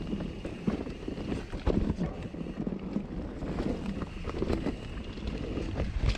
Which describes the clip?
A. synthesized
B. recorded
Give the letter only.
B